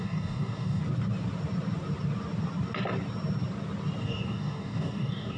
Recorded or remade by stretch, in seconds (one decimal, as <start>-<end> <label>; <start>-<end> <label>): 0.0-0.8 remade; 0.8-4.0 recorded; 4.0-5.4 remade